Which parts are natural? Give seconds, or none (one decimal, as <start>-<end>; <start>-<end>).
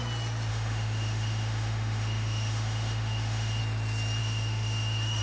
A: 0.0-0.5; 3.6-4.2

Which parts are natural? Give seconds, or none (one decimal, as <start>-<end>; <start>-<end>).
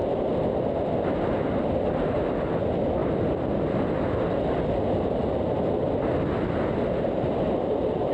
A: 0.0-8.1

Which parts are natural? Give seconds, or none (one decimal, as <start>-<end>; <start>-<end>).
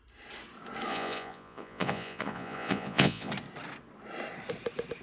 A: 0.0-0.9; 3.3-5.0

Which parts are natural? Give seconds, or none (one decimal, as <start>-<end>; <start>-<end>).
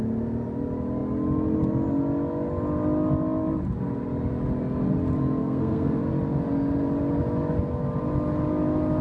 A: 0.0-5.4; 6.0-9.0